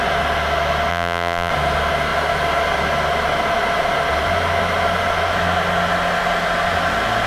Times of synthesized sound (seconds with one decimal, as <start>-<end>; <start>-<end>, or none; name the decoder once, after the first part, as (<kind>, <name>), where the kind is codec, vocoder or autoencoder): 0.9-1.5 (vocoder, BigVGAN v2)

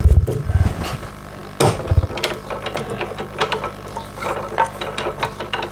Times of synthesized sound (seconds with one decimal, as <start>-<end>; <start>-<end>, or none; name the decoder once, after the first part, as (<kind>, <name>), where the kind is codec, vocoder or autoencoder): none

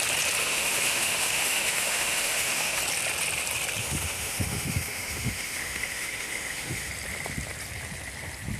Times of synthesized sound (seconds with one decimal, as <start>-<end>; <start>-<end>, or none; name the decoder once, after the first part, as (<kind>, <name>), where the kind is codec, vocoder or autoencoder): 0.4-2.8 (autoencoder, DAC-VAE); 3.8-6.9